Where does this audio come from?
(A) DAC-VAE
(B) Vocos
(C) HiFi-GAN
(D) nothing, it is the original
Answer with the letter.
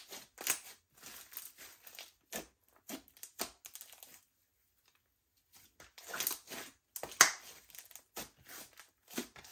D